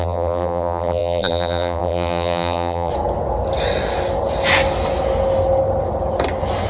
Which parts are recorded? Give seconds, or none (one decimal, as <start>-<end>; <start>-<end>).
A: 2.9-6.7